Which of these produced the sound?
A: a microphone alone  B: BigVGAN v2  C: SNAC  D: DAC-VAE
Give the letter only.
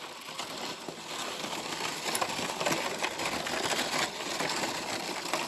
A